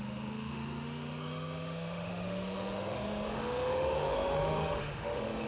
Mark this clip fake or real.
fake